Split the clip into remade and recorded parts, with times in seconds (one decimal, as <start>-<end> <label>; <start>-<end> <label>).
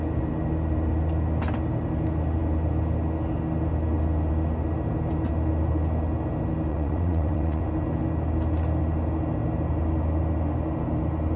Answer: 0.0-6.7 recorded; 6.7-7.6 remade; 7.6-11.4 recorded